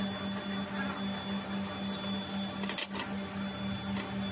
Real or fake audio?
real